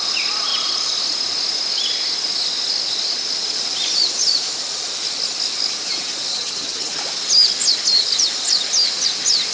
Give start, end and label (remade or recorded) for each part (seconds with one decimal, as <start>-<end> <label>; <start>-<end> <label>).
0.0-6.3 recorded; 6.3-7.0 remade; 7.0-9.5 recorded